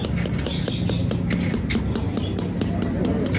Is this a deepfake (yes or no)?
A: no